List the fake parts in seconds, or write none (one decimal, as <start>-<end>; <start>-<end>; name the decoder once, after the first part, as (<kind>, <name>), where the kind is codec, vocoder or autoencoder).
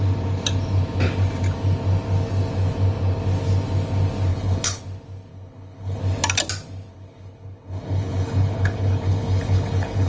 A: 4.3-4.8 (codec, HILCodec); 5.3-6.0; 6.9-10.1